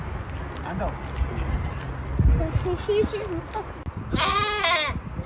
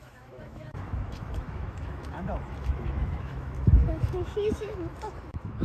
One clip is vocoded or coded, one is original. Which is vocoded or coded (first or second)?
second